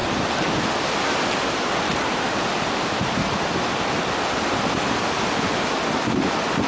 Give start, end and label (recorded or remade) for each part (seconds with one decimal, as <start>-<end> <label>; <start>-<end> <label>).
0.0-6.7 recorded